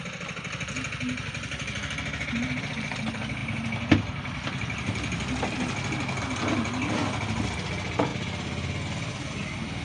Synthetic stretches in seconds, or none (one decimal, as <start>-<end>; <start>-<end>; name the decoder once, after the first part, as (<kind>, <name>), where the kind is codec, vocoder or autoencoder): none